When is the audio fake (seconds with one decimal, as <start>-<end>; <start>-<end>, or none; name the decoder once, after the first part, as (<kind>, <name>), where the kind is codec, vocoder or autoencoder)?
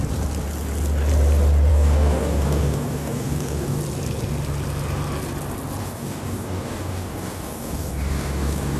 1.7-3.8 (codec, DAC); 5.8-8.8